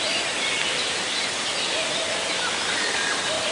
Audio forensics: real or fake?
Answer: real